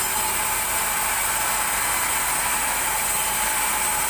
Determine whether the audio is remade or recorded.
recorded